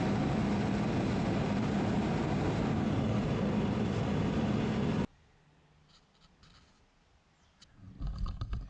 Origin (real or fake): real